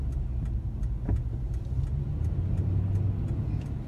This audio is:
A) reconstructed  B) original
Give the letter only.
B